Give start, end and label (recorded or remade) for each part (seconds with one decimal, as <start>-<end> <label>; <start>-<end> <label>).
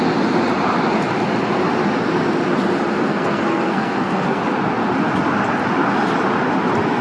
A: 0.0-3.1 recorded; 3.1-4.4 remade; 4.4-7.0 recorded